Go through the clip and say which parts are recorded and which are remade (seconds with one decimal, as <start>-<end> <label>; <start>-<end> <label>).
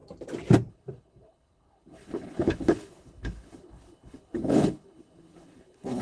0.0-0.7 recorded; 0.7-6.0 remade